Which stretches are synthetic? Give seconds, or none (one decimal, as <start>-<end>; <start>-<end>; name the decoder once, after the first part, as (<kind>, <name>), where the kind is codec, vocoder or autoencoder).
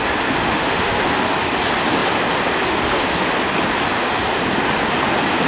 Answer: 0.4-1.0 (autoencoder, DAC-VAE)